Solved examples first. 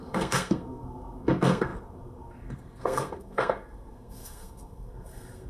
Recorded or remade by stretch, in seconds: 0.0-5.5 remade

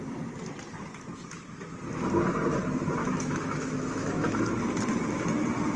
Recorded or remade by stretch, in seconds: 0.0-3.0 recorded; 3.0-4.4 remade; 4.4-5.8 recorded

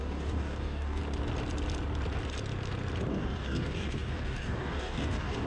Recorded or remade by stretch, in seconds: 0.0-1.0 remade; 1.0-3.1 recorded; 3.1-5.5 remade

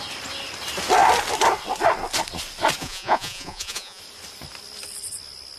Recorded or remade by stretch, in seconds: 0.0-2.8 recorded; 2.8-4.0 remade; 4.0-5.6 recorded

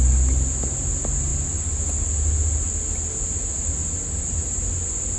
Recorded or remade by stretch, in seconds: 0.0-5.2 recorded